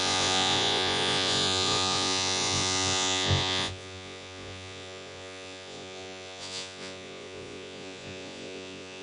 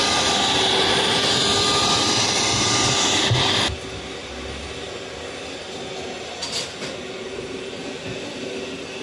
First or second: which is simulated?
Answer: first